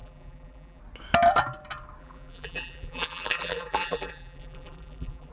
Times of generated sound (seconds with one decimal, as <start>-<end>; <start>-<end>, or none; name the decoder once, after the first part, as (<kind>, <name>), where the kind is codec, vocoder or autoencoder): 0.0-0.8 (vocoder, BigVGAN v2); 2.0-5.3